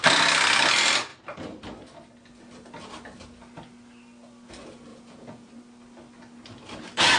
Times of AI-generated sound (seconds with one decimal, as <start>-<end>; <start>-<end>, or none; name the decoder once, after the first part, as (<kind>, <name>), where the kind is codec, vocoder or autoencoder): 4.9-5.5 (vocoder, Vocos)